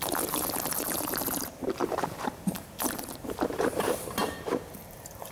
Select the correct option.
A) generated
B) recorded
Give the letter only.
A